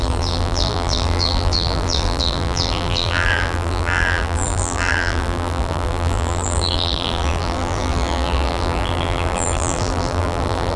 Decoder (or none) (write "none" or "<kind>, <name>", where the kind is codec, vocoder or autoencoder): vocoder, BigVGAN v2